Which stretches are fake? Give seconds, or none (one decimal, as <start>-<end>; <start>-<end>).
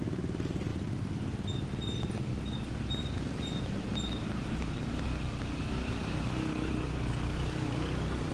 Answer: none